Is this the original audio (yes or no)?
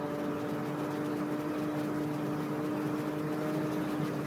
yes